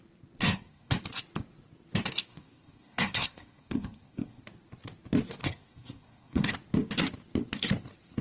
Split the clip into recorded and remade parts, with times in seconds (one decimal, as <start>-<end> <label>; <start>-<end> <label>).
0.0-0.4 recorded; 0.4-1.0 remade; 1.0-2.3 recorded; 2.3-4.4 remade; 4.4-5.4 recorded; 5.4-6.5 remade; 6.5-8.2 recorded